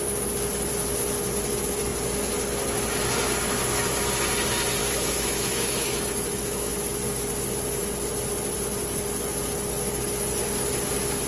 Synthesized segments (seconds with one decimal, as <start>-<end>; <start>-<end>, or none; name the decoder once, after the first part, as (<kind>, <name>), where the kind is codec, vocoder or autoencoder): 4.8-6.8 (autoencoder, DAC-VAE)